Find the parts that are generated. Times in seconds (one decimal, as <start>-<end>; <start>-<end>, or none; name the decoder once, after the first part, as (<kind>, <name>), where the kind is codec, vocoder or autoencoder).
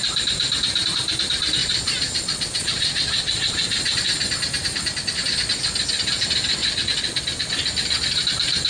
1.6-3.7 (vocoder, Vocos); 6.6-7.2